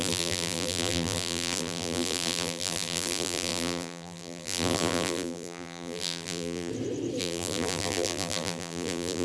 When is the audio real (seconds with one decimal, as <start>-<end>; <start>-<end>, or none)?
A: 6.7-7.2